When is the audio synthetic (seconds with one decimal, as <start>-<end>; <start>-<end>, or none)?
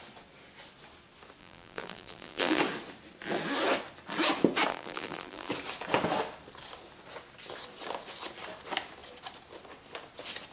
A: 1.4-2.6; 4.7-5.5